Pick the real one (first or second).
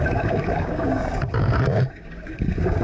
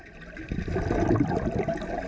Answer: second